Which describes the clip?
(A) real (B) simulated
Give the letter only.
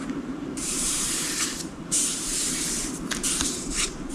B